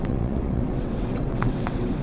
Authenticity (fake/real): fake